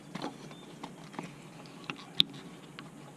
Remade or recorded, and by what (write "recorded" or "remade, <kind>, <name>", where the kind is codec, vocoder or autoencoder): recorded